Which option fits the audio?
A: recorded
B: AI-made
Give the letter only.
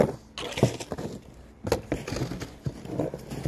A